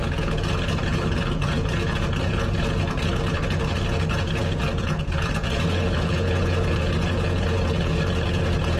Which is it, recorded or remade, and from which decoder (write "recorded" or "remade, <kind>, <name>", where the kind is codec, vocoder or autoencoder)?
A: remade, vocoder, Vocos